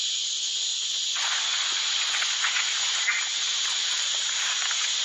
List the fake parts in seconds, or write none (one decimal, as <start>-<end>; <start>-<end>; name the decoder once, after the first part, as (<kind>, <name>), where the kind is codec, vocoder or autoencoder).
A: 0.7-3.0 (vocoder, Vocos)